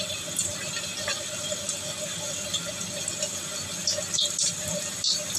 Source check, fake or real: real